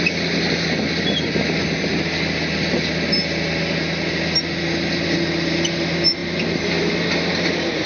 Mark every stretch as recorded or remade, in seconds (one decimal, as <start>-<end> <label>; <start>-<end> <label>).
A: 0.0-7.9 recorded